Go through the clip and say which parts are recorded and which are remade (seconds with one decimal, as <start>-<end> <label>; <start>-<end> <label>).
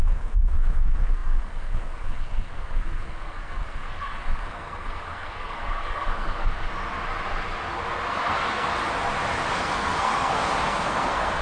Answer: 0.0-6.7 remade; 6.7-8.1 recorded; 8.1-8.7 remade; 8.7-9.5 recorded; 9.5-11.4 remade